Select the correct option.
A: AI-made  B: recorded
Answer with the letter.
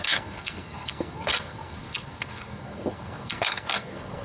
A